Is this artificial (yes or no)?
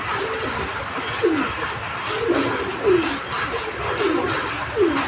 no